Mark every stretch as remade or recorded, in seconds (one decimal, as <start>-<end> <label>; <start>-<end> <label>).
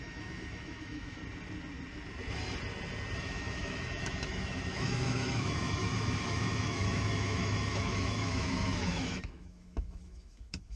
0.0-1.2 remade; 1.2-3.2 recorded; 3.2-10.8 remade